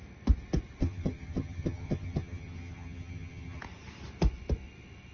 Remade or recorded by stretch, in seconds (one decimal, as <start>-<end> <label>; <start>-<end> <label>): 0.0-0.8 recorded; 0.8-3.6 remade; 3.6-5.1 recorded